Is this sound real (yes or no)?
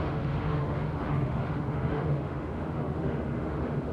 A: no